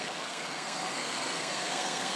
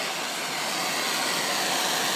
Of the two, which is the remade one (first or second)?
first